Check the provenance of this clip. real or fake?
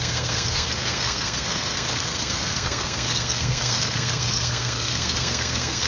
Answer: fake